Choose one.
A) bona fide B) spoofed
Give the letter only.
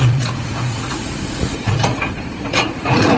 B